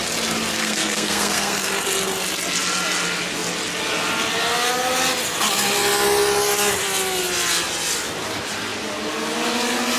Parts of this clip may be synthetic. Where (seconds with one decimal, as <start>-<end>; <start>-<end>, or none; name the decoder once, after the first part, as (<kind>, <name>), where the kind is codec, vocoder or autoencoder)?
0.6-1.7 (codec, SNAC)